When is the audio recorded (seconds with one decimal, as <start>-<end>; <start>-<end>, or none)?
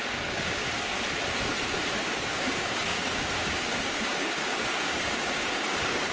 0.6-2.0